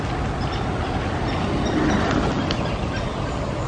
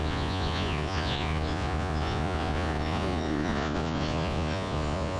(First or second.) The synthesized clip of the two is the second